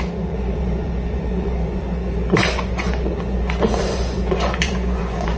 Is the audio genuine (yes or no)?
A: no